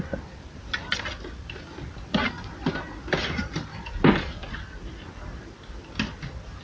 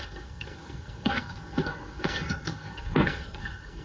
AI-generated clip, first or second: second